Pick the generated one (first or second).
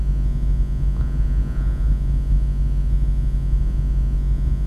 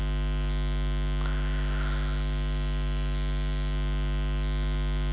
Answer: first